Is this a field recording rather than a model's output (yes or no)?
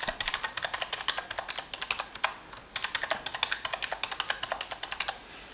yes